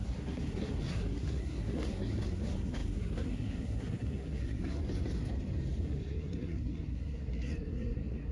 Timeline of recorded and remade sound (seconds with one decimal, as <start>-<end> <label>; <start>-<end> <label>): 0.0-4.8 remade; 4.8-5.8 recorded; 5.8-8.3 remade